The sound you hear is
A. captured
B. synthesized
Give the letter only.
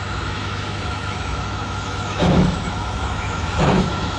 B